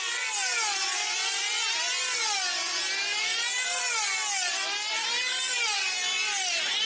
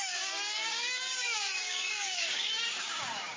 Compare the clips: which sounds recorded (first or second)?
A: first